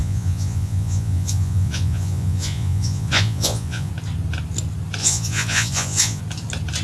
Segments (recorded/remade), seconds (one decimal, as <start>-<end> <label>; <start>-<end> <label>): 0.0-3.9 remade; 3.9-5.0 recorded; 5.0-6.2 remade; 6.2-6.8 recorded